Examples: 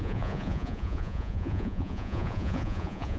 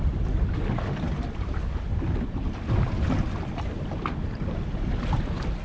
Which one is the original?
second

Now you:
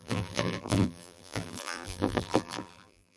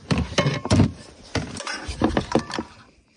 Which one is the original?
second